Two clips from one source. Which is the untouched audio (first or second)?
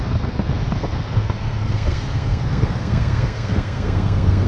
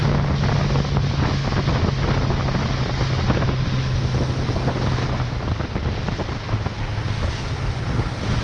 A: second